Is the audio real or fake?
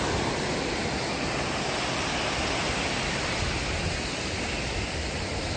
real